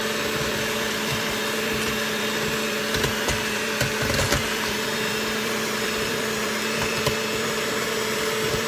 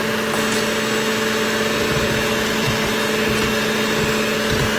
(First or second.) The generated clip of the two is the first